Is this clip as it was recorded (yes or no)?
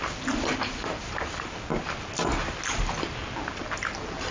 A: yes